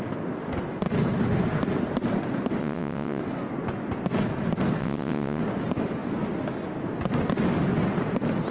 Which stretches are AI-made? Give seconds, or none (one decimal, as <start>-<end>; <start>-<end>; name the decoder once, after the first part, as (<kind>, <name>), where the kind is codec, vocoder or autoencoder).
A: 2.6-3.2 (vocoder, WaveNeXt); 4.8-5.4